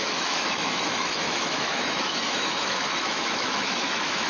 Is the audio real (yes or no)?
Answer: no